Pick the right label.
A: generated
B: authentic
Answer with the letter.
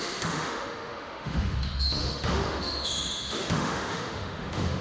A